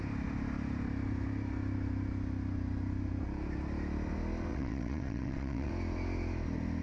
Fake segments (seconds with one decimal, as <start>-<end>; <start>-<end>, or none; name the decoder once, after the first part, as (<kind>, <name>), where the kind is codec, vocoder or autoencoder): 4.5-5.7 (vocoder, WaveNeXt)